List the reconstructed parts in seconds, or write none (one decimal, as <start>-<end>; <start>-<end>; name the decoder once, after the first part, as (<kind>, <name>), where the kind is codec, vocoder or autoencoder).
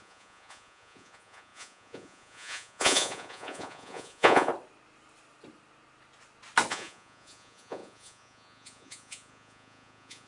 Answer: 0.0-4.5 (vocoder, Vocos); 6.7-10.3